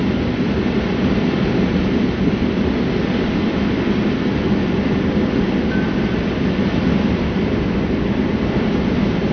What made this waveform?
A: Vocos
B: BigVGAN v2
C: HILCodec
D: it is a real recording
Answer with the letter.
B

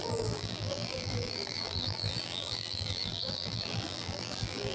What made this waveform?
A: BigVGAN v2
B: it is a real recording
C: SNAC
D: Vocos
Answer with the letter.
A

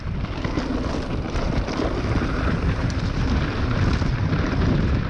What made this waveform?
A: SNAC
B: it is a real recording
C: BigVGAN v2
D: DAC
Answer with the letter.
B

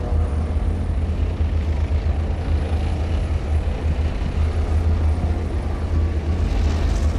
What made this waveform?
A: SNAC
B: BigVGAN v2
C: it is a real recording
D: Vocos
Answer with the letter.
C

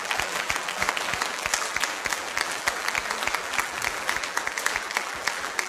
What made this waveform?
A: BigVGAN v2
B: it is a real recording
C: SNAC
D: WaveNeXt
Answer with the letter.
A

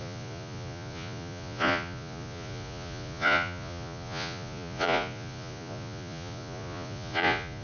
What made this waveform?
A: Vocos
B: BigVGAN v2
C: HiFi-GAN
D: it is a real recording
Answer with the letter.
A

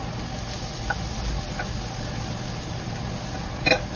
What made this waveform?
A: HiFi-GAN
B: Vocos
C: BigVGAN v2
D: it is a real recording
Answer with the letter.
D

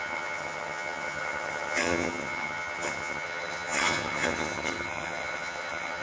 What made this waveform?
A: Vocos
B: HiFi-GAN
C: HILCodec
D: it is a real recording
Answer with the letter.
B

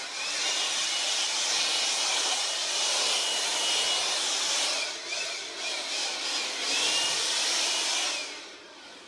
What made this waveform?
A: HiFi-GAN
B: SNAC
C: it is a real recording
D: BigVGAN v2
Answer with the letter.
C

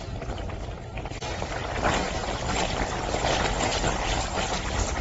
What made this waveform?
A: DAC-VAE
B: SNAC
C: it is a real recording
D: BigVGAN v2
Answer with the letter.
C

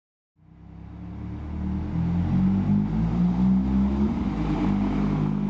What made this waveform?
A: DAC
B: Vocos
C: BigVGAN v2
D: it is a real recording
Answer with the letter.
D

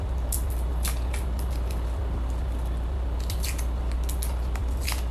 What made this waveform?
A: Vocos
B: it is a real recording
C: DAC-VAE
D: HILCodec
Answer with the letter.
B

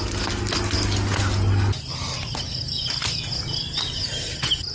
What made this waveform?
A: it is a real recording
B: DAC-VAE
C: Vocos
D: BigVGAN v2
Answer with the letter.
A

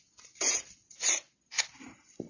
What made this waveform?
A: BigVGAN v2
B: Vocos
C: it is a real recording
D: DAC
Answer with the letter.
C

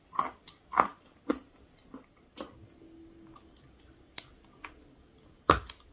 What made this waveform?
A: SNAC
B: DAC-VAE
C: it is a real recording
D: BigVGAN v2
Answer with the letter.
C